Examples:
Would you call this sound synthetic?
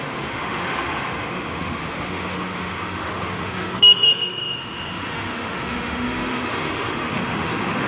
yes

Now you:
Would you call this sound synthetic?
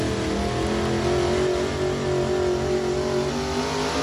no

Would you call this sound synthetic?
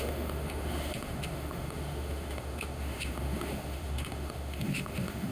yes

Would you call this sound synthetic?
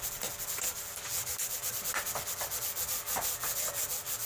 no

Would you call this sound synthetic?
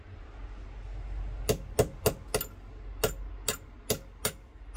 no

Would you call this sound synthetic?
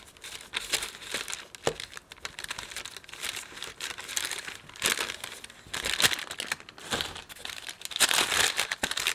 no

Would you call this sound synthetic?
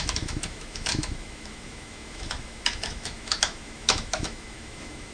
yes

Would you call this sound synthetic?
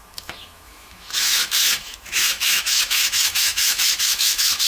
yes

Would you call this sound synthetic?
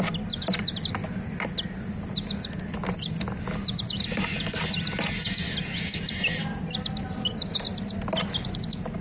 no